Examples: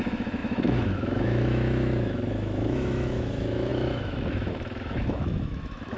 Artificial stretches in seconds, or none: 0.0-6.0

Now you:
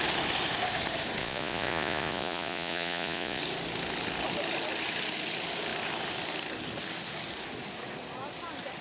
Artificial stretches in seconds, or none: 1.2-3.4

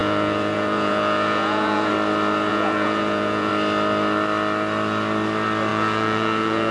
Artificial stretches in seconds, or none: 0.0-1.9; 2.5-3.5; 5.7-6.7